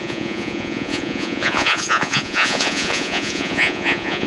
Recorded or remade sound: remade